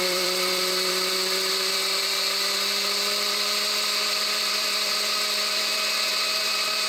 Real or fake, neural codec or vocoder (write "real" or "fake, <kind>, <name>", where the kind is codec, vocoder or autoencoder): fake, vocoder, BigVGAN v2